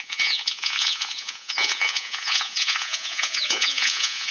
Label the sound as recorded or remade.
remade